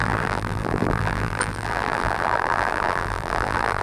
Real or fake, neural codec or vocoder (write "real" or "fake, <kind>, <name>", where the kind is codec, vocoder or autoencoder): fake, vocoder, BigVGAN v2